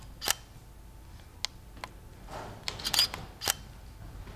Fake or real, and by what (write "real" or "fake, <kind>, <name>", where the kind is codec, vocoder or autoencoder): real